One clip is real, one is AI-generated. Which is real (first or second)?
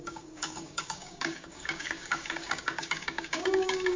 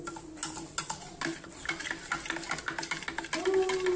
second